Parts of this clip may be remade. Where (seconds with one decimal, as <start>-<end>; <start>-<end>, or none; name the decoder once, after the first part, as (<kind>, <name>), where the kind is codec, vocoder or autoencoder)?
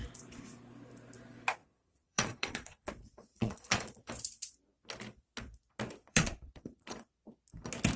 1.6-2.9 (vocoder, Vocos); 3.3-4.1; 6.0-7.0